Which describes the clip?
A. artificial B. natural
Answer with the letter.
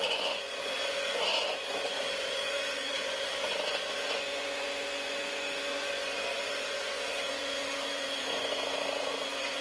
A